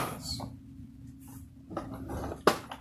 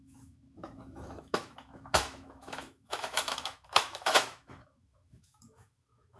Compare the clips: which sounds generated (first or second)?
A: second